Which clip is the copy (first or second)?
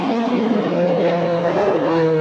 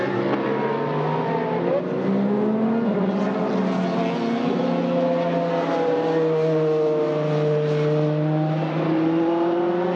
first